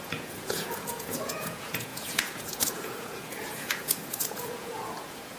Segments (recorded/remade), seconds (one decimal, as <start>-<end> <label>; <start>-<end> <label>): 0.0-5.4 remade